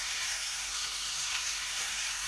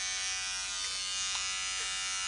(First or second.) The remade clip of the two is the first